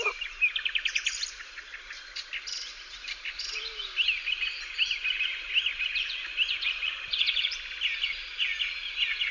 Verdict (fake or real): real